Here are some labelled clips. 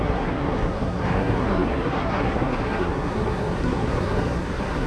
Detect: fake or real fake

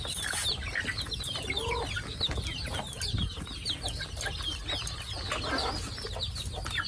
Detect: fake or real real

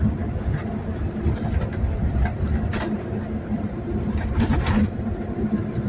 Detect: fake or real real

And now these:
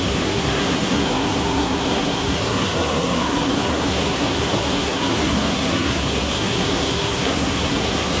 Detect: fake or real fake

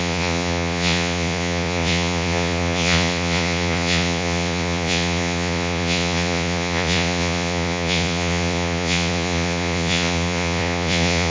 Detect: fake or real fake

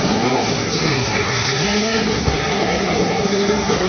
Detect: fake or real fake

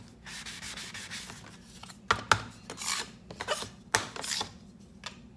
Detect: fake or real real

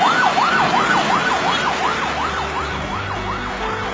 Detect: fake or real real